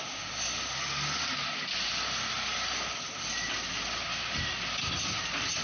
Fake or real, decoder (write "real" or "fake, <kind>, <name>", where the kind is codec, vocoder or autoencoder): real